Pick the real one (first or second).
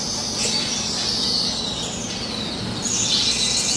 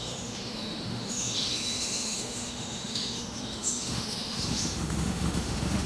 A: first